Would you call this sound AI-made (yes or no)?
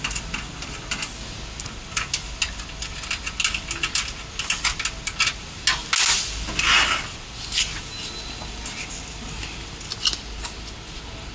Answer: no